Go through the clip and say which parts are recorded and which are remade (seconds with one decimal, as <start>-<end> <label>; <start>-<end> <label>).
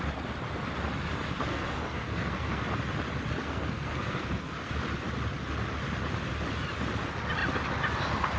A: 0.0-1.5 recorded; 1.5-2.6 remade; 2.6-3.4 recorded; 3.4-4.7 remade; 4.7-8.4 recorded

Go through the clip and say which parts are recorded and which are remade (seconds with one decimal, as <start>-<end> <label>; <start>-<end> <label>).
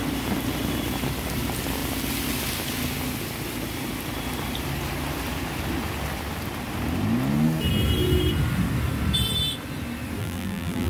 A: 0.0-10.2 recorded; 10.2-10.9 remade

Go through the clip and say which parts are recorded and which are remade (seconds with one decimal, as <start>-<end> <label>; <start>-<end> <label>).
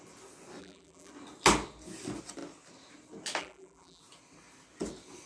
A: 0.0-0.6 recorded; 0.6-1.1 remade; 1.1-3.4 recorded; 3.4-4.0 remade; 4.0-5.3 recorded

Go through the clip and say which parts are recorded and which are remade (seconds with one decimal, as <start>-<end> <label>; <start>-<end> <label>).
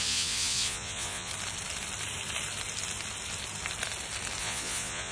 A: 0.0-1.3 remade; 1.3-4.4 recorded; 4.4-5.1 remade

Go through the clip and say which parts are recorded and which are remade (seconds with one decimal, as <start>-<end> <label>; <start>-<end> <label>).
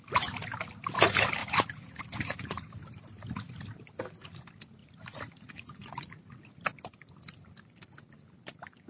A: 0.0-1.4 recorded; 1.4-2.7 remade; 2.7-4.8 recorded; 4.8-6.4 remade; 6.4-8.9 recorded